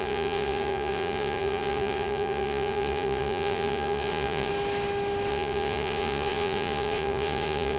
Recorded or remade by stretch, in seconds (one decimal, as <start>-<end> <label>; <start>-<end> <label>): 0.0-4.5 remade; 4.5-5.3 recorded; 5.3-7.8 remade